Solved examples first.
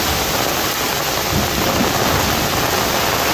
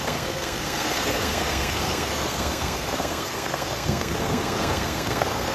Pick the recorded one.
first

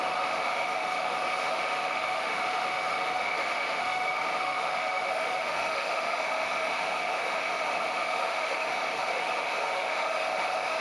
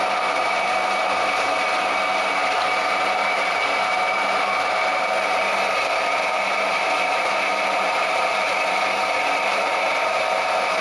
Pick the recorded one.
second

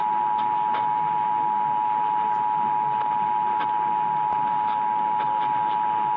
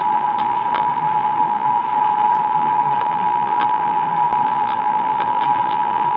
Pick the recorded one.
first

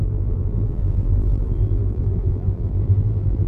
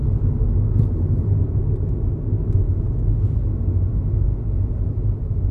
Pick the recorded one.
second